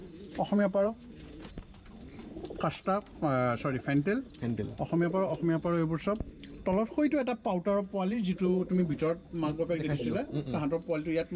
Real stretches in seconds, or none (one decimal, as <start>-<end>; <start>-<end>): 1.5-7.9; 8.8-11.4